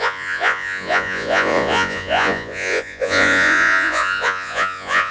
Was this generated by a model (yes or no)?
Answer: yes